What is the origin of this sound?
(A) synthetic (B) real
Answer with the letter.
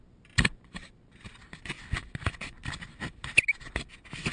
B